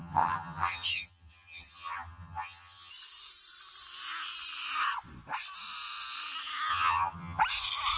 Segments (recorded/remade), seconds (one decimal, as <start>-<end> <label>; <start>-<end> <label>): 0.0-2.9 remade; 2.9-6.7 recorded; 6.7-7.4 remade; 7.4-8.0 recorded